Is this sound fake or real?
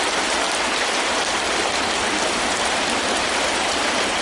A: real